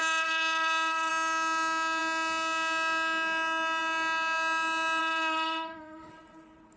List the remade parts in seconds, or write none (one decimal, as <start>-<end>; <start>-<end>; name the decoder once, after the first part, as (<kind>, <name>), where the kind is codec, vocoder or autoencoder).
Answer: 0.0-1.1 (autoencoder, DAC-VAE); 5.0-6.1